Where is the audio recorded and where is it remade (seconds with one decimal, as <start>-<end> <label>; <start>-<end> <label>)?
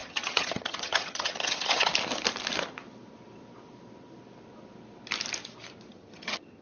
0.0-1.9 remade; 1.9-5.9 recorded; 5.9-6.6 remade